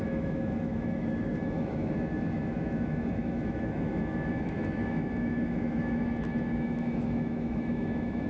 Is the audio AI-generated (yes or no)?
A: yes